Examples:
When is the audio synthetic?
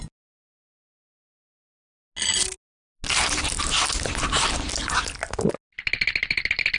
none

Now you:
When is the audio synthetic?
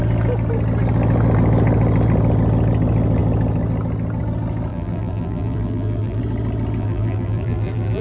4.7-6.2 (vocoder, BigVGAN v2); 6.8-8.0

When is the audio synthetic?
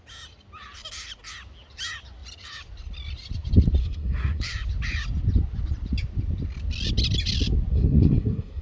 3.8-4.4 (codec, SNAC); 7.7-8.6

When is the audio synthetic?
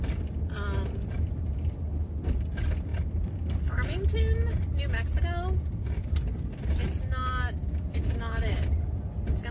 none